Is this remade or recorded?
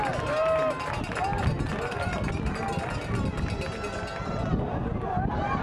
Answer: recorded